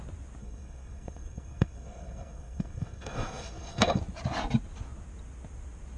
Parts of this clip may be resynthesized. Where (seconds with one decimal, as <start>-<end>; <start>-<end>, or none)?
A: 0.4-4.0